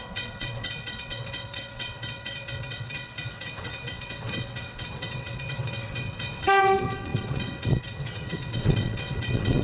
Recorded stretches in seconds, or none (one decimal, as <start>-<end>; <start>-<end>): none